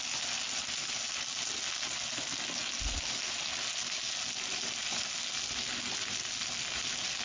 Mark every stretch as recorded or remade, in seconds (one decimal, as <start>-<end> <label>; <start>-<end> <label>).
0.0-7.2 recorded

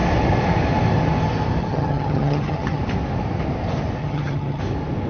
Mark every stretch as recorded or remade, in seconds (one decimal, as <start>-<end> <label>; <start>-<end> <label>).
0.0-1.6 recorded; 1.6-2.8 remade; 2.8-4.0 recorded; 4.0-4.6 remade; 4.6-5.1 recorded

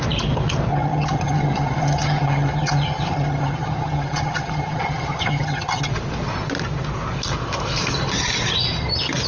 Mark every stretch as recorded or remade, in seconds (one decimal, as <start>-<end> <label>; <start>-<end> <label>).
0.0-0.7 recorded; 0.7-5.9 remade; 5.9-9.3 recorded

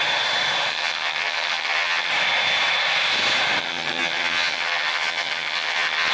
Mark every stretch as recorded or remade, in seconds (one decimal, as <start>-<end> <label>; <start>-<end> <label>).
0.0-0.7 recorded; 0.7-2.1 remade; 2.1-3.6 recorded; 3.6-6.1 remade

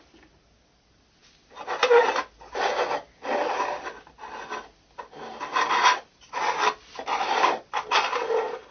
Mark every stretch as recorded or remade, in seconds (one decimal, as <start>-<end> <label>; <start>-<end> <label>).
0.0-8.7 recorded